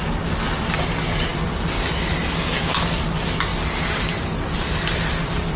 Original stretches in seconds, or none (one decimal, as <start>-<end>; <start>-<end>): 0.0-5.6